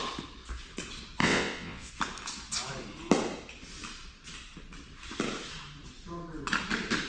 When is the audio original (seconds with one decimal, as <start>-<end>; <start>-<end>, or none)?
0.0-1.2; 1.9-7.1